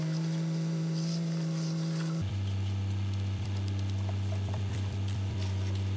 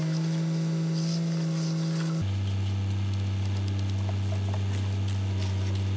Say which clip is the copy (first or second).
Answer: first